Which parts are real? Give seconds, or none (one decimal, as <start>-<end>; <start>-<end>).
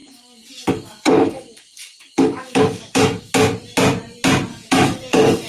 3.3-4.5